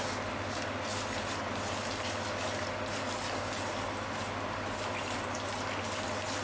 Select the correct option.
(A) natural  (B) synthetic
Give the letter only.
A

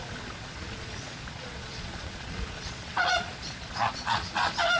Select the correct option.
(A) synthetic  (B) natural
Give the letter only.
A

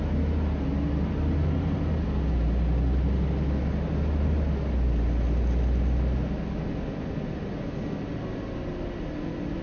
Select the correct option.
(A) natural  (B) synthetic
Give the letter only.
A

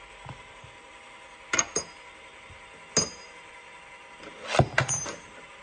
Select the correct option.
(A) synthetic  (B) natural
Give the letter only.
B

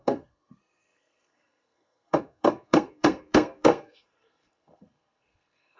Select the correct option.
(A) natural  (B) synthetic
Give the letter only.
B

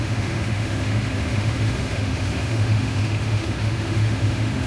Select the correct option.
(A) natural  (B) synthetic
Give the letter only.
B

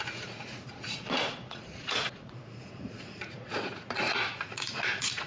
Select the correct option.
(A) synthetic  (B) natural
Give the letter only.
A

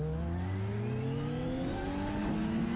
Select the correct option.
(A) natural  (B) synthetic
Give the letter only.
A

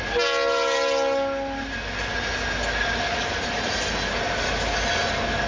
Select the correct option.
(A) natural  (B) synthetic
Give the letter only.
A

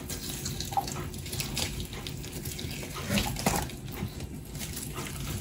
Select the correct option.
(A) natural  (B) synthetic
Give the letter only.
A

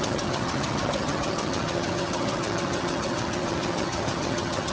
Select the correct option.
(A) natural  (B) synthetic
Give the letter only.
B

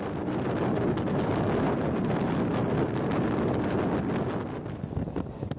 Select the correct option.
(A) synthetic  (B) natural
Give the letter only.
B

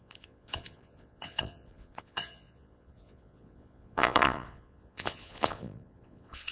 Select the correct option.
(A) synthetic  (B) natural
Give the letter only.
A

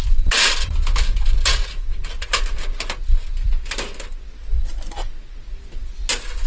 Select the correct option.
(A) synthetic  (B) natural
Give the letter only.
B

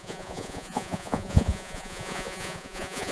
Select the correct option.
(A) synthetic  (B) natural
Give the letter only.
A